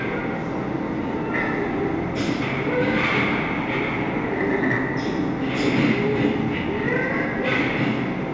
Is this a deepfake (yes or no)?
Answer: no